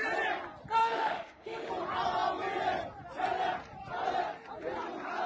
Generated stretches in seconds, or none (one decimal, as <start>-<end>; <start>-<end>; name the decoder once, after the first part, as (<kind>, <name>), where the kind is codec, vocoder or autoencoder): 0.8-1.7 (autoencoder, DAC-VAE)